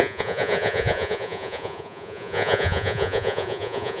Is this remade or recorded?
remade